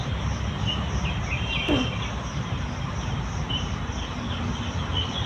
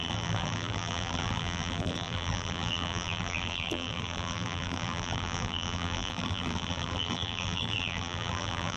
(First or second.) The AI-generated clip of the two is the second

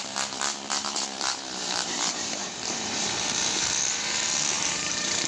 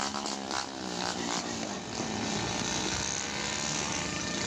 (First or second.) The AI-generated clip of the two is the first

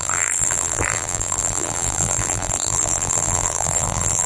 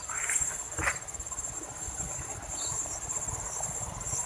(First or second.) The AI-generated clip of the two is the first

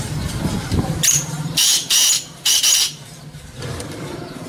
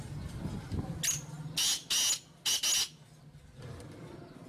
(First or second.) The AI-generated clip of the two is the first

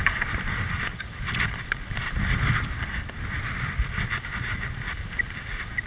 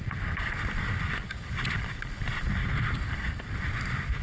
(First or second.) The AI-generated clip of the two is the second